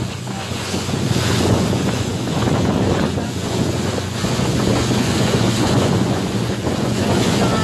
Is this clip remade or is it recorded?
remade